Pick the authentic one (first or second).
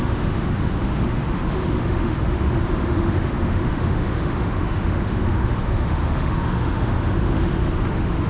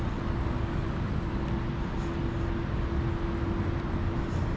second